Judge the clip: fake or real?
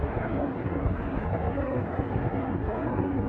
fake